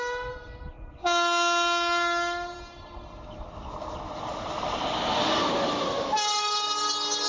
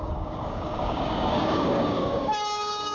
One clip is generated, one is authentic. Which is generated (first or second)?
second